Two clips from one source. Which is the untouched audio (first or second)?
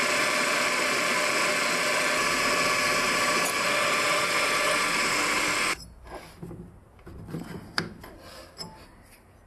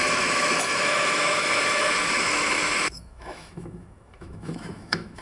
first